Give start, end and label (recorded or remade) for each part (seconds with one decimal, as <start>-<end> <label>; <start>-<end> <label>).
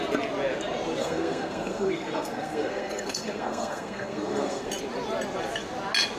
0.0-1.0 recorded; 1.0-4.7 remade; 4.7-6.2 recorded